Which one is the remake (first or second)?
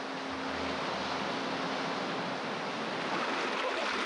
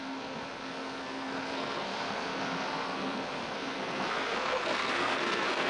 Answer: second